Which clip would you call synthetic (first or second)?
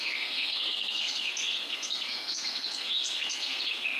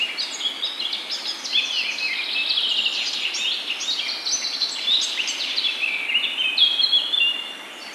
first